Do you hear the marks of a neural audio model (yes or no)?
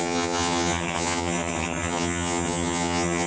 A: yes